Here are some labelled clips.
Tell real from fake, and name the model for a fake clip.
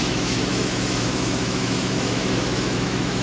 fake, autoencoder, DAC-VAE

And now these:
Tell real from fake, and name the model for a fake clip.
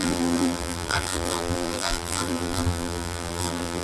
fake, vocoder, BigVGAN v2